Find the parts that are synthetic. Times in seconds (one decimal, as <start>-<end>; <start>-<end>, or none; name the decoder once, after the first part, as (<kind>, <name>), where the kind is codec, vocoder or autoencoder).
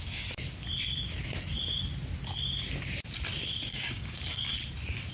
3.7-4.5 (codec, DAC)